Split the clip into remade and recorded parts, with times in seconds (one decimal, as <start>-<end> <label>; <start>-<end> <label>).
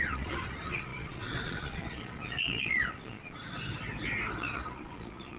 0.0-3.4 remade; 3.4-4.4 recorded; 4.4-5.4 remade